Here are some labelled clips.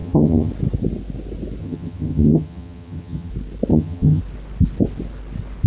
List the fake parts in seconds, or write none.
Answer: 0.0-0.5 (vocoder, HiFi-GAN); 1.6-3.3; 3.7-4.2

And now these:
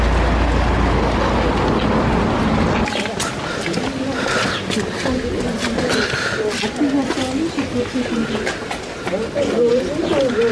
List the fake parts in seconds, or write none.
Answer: none

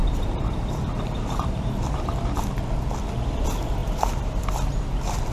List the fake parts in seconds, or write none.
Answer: 0.0-2.2 (vocoder, BigVGAN v2); 3.8-4.4

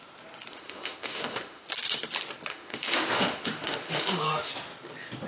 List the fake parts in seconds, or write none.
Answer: 0.5-1.7 (autoencoder, DAC-VAE); 2.5-4.5

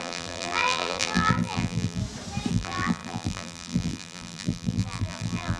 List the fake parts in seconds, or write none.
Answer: 0.0-2.0 (vocoder, BigVGAN v2); 2.5-5.6

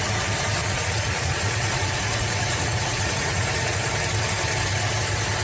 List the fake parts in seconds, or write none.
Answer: 0.6-3.8 (vocoder, Vocos)